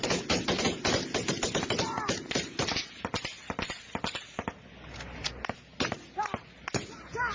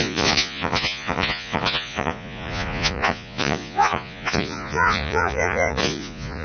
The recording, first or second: first